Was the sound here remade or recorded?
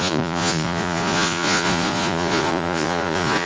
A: remade